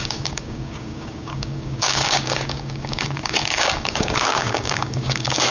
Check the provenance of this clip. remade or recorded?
remade